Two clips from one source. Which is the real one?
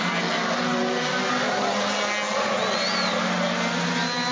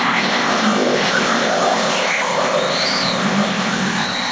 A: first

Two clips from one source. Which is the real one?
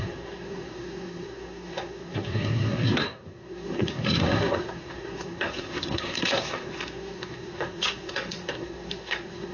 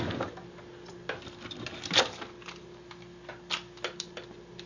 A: second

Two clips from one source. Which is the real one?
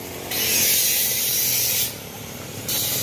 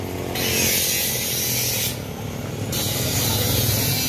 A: second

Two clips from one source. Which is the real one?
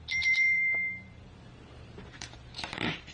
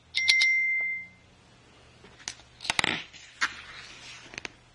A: second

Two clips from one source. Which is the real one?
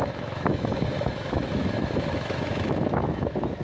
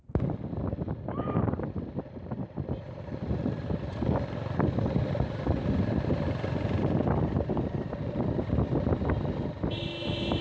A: second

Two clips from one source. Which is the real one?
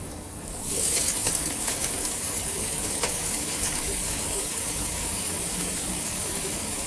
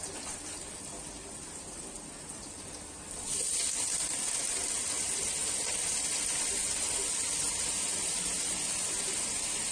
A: second